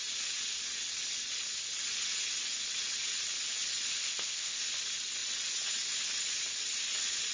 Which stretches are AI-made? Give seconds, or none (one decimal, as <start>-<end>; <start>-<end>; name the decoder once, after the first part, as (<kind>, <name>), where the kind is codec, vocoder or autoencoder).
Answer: 4.0-4.6 (codec, ZipCodec)